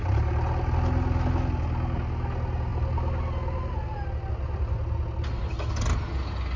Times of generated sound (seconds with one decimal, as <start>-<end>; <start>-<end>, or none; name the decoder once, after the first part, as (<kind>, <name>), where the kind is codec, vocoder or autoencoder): none